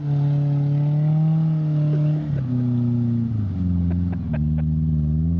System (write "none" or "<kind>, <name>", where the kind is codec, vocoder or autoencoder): none